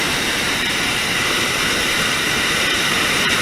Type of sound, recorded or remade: remade